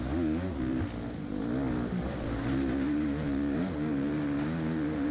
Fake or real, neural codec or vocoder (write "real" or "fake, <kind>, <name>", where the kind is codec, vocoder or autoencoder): real